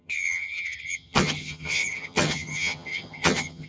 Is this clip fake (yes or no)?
yes